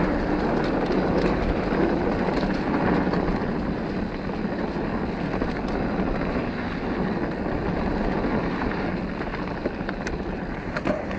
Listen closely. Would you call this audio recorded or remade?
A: recorded